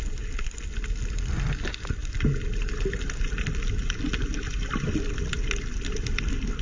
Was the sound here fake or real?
real